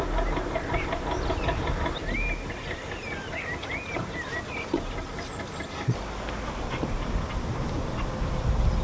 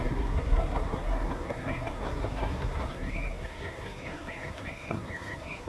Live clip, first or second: first